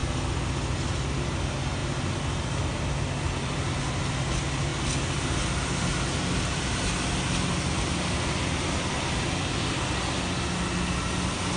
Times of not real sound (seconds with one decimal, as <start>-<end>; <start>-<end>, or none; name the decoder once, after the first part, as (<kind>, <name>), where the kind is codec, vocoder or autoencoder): none